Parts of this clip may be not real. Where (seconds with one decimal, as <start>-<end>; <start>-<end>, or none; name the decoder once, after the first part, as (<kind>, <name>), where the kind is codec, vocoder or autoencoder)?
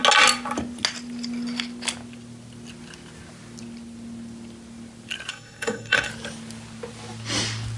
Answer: 5.3-6.1 (codec, DAC)